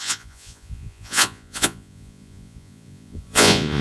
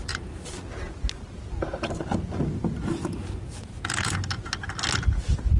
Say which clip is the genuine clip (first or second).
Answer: second